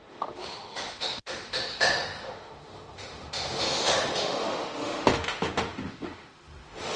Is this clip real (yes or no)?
no